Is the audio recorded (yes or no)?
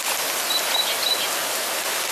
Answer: yes